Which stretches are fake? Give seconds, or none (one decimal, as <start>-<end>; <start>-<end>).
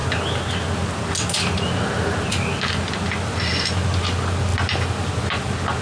none